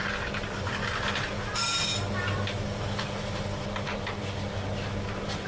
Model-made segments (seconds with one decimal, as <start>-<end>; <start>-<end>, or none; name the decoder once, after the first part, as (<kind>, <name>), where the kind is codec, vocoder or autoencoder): none